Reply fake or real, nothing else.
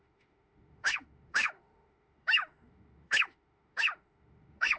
fake